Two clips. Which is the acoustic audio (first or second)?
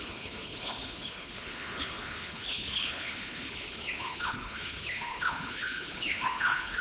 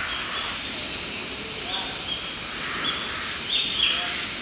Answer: second